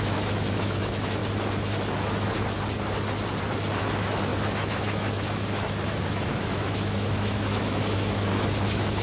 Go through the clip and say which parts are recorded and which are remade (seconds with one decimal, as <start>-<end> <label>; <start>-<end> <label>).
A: 0.0-1.2 remade; 1.2-3.8 recorded; 3.8-9.0 remade